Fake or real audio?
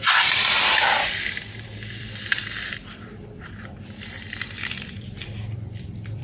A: fake